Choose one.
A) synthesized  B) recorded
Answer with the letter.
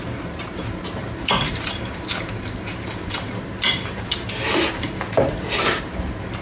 A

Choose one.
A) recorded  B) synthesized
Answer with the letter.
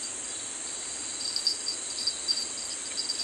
A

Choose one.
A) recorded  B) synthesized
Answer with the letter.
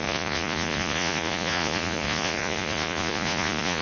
B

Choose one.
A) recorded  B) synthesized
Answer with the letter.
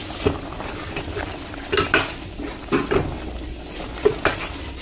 A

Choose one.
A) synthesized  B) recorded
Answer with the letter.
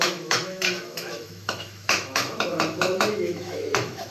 A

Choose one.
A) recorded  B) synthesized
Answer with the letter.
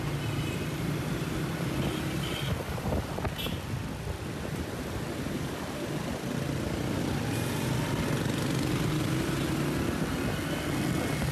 A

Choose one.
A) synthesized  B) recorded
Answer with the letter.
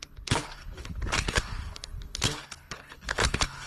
A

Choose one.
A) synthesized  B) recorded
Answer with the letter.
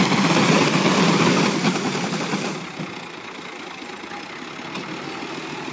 B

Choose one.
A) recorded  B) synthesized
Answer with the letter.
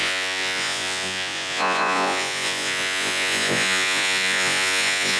B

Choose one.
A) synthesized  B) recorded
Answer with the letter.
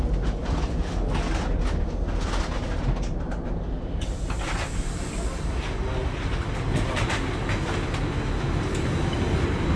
B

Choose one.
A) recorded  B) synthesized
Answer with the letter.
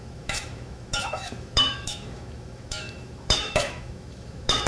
B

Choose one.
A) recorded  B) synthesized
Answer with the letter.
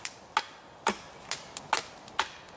A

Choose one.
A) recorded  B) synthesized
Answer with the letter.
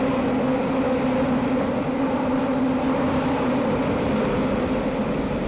A